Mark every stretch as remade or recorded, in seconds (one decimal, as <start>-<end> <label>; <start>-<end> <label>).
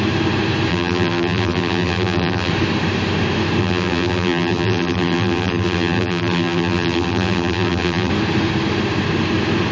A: 0.0-0.7 recorded; 0.7-2.5 remade; 2.5-3.6 recorded; 3.6-8.1 remade; 8.1-9.7 recorded